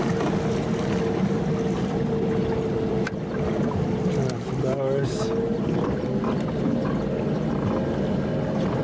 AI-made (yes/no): no